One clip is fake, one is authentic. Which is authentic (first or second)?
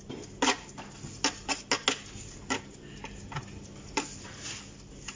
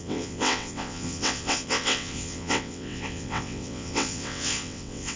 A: first